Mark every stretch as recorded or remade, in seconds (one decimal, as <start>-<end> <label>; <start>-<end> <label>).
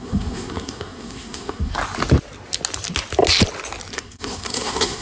0.0-1.7 remade; 1.7-3.9 recorded; 3.9-5.0 remade